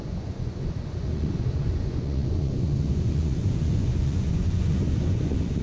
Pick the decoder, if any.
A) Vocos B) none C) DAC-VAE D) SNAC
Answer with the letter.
A